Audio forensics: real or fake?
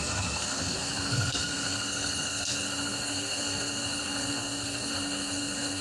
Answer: fake